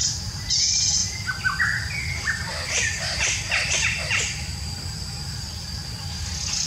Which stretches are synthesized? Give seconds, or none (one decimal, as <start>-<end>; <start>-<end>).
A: 1.0-1.6; 2.5-6.7